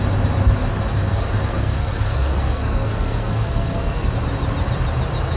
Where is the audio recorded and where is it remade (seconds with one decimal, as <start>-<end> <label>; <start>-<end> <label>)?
0.0-1.1 recorded; 1.1-4.1 remade; 4.1-5.4 recorded